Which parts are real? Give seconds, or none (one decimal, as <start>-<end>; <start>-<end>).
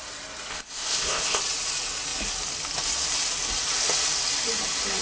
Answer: 0.0-0.5; 1.4-5.0